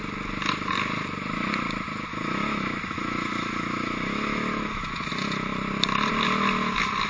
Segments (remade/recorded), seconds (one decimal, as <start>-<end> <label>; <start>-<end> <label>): 0.0-2.1 recorded; 2.1-5.1 remade; 5.1-7.1 recorded